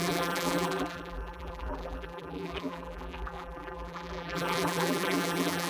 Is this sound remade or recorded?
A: remade